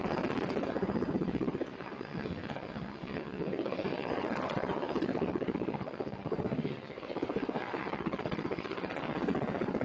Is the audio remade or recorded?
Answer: remade